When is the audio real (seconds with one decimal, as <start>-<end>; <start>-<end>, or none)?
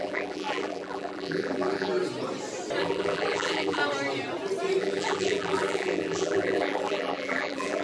1.9-2.8; 3.8-4.8